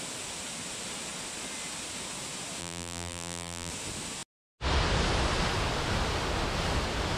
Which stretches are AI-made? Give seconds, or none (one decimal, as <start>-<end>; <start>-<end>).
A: 2.6-3.7